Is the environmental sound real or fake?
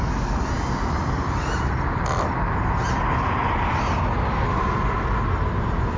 real